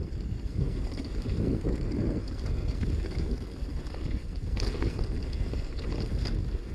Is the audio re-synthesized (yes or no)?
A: yes